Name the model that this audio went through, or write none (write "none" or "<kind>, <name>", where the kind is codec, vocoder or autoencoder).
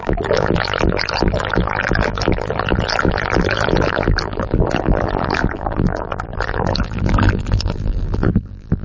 vocoder, BigVGAN v2